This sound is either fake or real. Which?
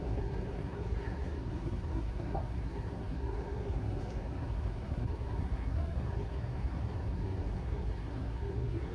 fake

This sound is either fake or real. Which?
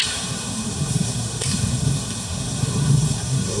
fake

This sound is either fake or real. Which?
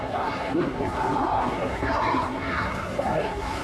fake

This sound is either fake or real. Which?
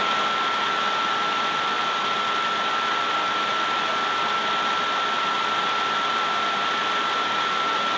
real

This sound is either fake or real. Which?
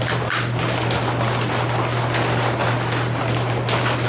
real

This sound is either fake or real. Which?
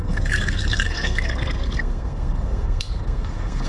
fake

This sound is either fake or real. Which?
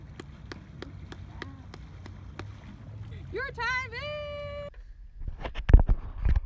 real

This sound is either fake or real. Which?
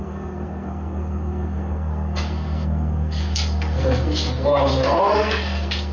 fake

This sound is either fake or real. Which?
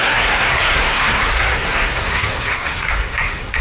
fake